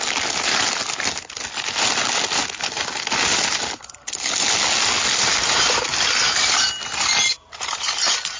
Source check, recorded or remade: recorded